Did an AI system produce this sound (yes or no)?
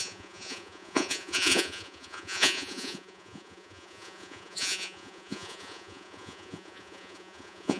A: yes